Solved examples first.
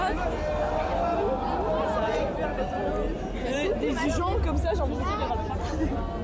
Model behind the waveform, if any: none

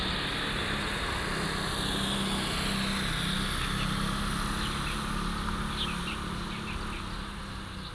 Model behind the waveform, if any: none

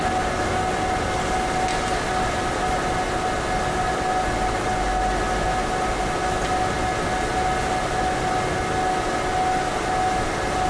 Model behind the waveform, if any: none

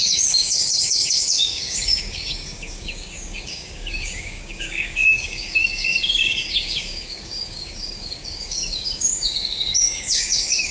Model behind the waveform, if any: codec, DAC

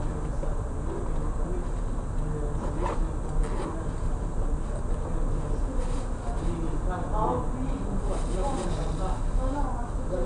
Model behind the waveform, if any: none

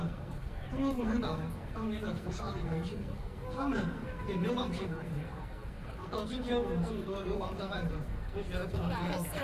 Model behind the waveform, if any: codec, SNAC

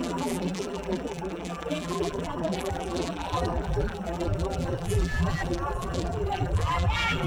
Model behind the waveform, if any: vocoder, BigVGAN v2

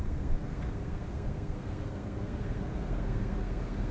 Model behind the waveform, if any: codec, SNAC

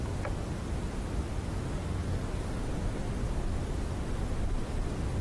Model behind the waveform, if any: none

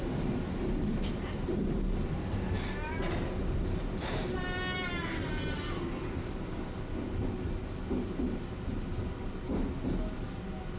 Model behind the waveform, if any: none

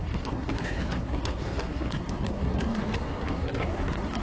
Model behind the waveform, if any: codec, SNAC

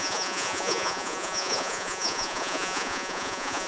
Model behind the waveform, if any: vocoder, Vocos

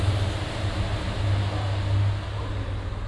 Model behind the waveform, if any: none